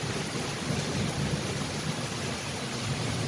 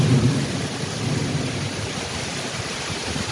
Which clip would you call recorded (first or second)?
first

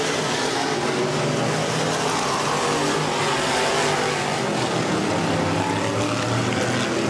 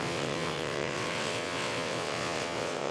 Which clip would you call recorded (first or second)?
first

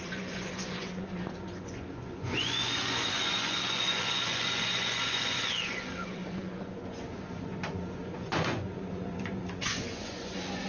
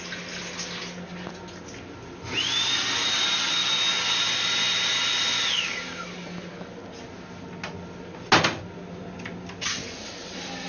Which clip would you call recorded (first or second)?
second